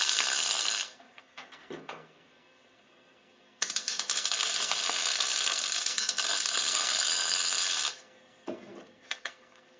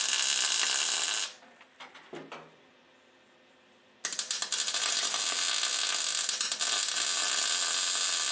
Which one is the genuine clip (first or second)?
second